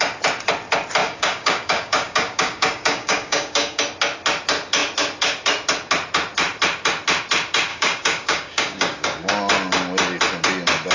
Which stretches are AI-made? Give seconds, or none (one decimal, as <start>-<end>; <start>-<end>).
1.0-3.8; 7.7-9.3